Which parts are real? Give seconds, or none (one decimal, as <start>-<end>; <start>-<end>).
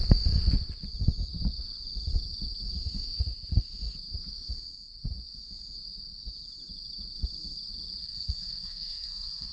0.0-8.0